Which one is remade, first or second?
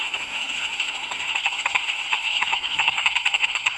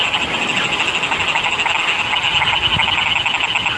first